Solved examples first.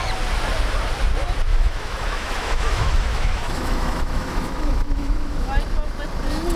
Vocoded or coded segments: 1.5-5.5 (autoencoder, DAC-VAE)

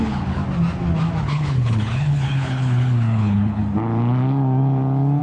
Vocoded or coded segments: 0.0-0.4 (codec, HILCodec); 1.2-3.6

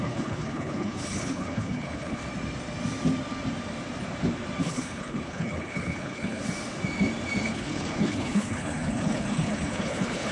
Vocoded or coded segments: 0.0-2.2 (codec, HILCodec); 4.6-6.4; 7.4-10.3

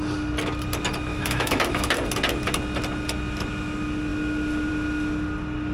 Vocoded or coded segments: 1.1-1.9 (autoencoder, DAC-VAE)

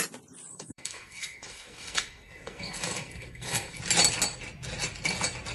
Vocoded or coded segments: 0.5-3.8 (codec, SNAC)